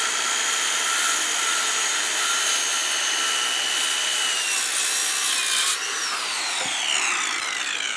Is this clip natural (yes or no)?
yes